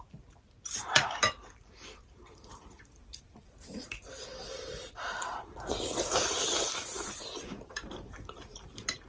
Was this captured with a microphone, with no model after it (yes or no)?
no